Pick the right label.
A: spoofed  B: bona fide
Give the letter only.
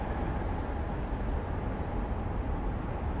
B